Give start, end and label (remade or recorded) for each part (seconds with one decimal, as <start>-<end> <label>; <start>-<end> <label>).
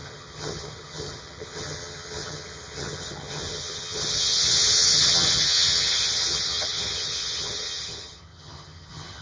0.0-9.2 remade